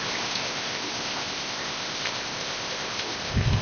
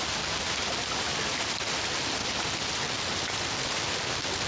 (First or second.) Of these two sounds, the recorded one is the second